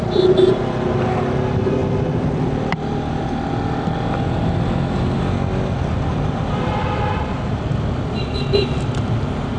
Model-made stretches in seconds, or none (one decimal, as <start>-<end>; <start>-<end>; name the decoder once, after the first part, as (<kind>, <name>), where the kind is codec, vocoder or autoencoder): none